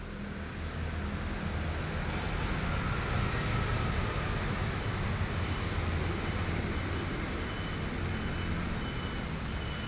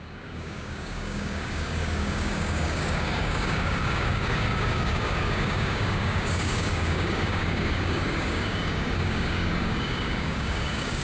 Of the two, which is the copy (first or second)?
second